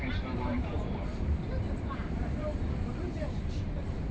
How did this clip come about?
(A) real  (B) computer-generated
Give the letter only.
B